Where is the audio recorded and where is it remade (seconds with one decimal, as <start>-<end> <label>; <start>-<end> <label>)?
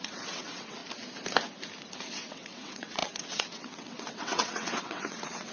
0.0-0.8 remade; 0.8-2.0 recorded; 2.0-5.5 remade